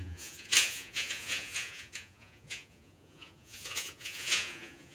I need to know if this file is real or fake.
fake